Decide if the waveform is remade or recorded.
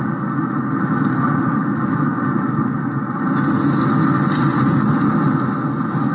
recorded